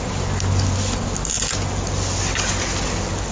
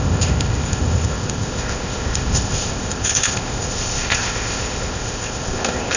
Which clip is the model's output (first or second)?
second